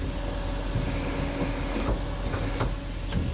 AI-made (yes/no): no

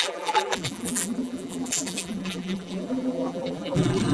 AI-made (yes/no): yes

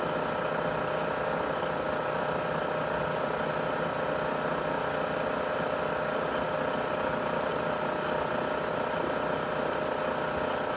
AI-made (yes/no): no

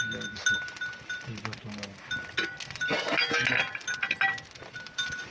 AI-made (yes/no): no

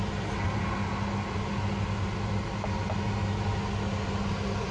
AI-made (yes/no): no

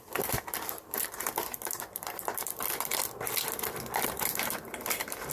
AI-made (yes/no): yes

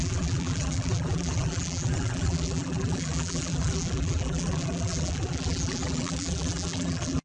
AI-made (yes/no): yes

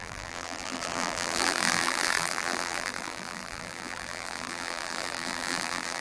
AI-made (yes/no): yes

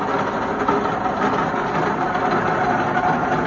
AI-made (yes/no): no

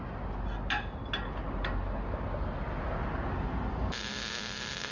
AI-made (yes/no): no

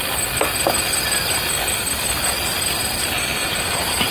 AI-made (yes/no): no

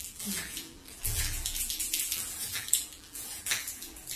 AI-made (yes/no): yes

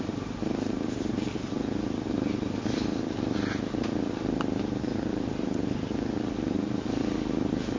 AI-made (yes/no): no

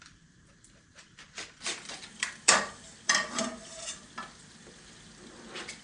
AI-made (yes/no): yes